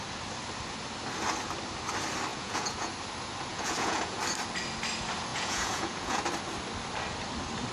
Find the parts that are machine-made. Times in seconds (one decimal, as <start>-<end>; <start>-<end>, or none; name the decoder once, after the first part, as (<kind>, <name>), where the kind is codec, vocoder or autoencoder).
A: 2.3-2.9 (vocoder, Vocos); 3.5-4.2; 5.3-6.2